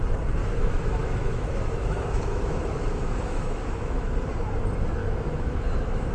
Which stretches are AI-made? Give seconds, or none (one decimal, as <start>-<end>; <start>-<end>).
0.4-4.1; 5.0-6.1